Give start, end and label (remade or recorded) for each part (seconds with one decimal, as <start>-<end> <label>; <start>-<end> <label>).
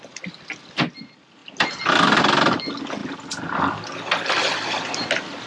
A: 0.0-5.5 recorded